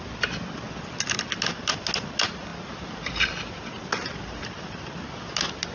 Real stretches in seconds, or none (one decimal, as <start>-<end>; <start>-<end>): 0.0-5.7